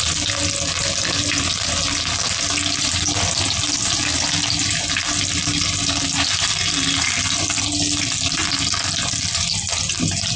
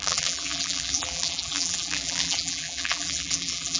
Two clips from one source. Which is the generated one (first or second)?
second